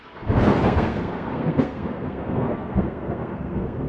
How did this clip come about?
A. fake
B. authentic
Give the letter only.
A